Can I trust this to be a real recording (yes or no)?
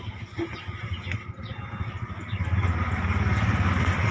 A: yes